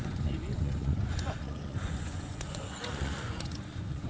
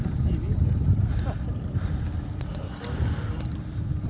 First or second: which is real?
second